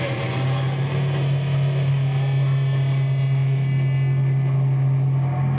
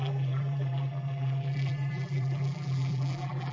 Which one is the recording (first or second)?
first